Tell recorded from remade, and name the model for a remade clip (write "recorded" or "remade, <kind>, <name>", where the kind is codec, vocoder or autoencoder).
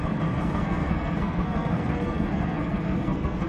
remade, codec, SNAC